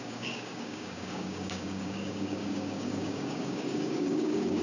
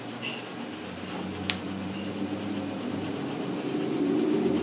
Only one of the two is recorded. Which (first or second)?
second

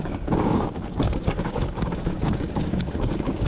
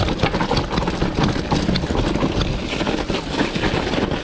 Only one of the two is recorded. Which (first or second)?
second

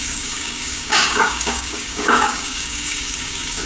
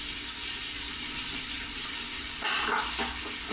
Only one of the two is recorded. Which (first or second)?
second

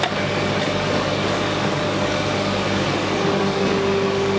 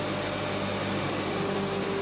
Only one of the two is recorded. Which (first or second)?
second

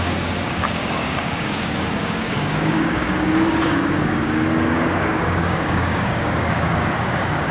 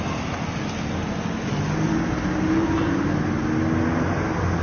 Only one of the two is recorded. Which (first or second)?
second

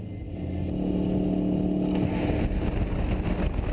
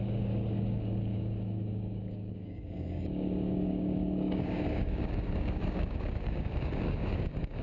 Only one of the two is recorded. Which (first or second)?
first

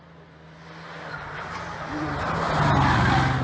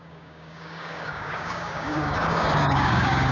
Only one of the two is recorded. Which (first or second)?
first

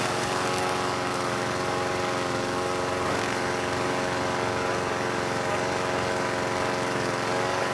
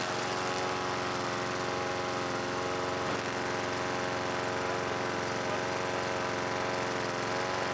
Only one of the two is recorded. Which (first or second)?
second